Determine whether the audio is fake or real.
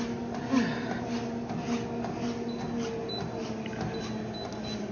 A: real